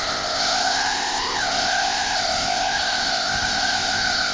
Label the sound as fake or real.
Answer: fake